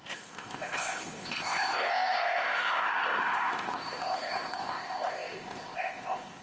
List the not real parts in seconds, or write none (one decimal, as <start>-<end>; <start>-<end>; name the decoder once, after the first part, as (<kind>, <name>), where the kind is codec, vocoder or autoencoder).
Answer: 0.0-6.4 (codec, ZipCodec)